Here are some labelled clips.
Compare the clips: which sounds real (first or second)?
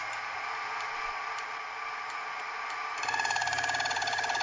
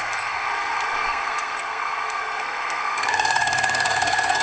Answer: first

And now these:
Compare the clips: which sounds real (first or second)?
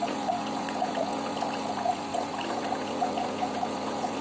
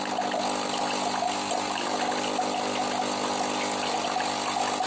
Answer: second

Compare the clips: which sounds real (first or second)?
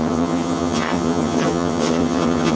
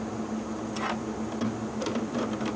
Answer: second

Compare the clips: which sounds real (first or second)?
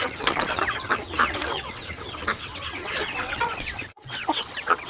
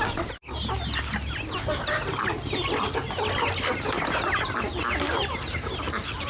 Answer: second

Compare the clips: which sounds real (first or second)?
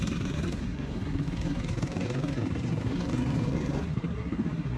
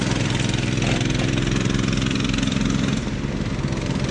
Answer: second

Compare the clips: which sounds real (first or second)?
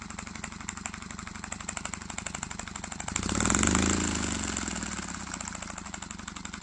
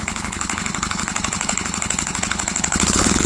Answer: first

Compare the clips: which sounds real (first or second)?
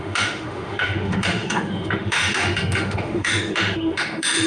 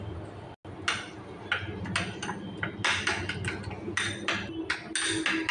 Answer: second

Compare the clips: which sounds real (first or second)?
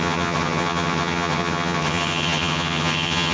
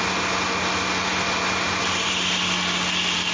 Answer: second